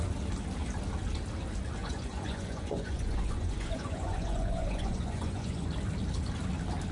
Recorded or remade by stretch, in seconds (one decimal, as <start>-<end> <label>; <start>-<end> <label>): 0.0-1.8 recorded; 1.8-5.7 remade; 5.7-6.9 recorded